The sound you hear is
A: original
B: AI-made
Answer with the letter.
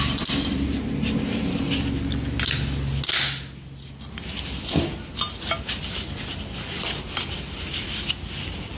A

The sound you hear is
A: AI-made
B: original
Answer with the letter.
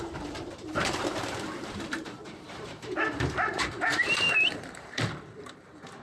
A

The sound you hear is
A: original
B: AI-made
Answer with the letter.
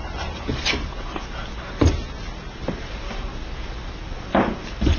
A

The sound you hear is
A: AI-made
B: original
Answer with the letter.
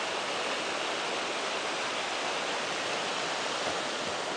B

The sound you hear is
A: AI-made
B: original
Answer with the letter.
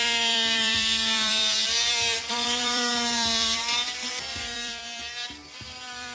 A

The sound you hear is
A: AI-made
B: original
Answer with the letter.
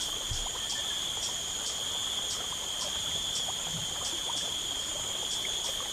A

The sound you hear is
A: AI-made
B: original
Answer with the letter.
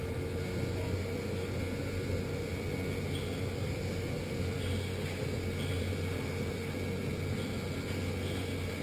B